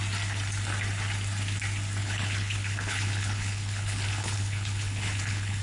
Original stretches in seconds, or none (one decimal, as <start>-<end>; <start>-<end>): 0.0-2.0